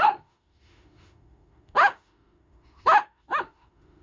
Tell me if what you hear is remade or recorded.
remade